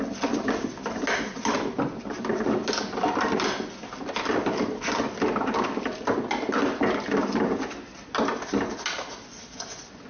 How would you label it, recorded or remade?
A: recorded